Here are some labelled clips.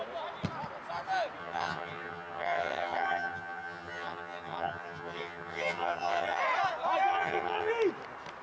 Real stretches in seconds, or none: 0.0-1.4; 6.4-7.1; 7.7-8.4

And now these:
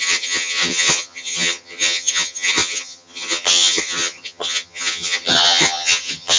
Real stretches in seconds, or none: none

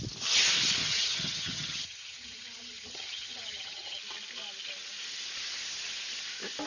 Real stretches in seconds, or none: 0.0-0.8; 4.0-6.7

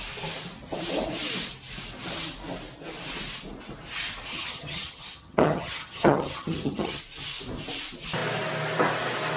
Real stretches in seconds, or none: 0.0-4.3; 7.0-9.4

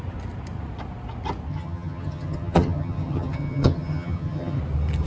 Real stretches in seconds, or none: 0.0-1.5; 4.6-5.1